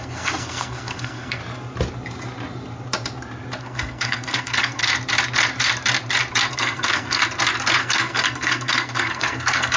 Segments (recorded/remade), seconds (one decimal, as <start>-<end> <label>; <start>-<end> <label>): 0.0-1.4 remade; 1.4-3.6 recorded; 3.6-4.8 remade; 4.8-6.5 recorded; 6.5-7.2 remade; 7.2-7.8 recorded; 7.8-9.8 remade